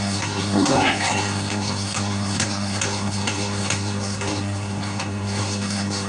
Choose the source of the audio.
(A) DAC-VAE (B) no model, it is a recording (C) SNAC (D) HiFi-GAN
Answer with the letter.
C